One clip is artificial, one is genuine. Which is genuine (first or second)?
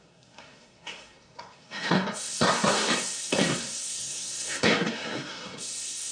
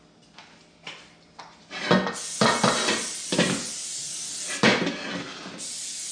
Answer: second